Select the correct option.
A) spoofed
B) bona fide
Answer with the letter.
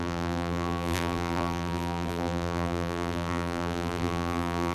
A